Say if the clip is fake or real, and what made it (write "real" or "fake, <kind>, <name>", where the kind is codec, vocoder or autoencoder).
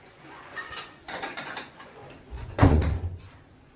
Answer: fake, vocoder, Vocos